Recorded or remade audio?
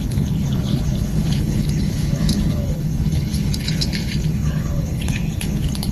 remade